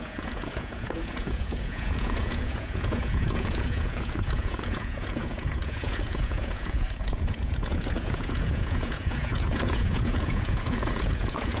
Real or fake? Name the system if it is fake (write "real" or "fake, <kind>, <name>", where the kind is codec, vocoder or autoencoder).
fake, vocoder, Vocos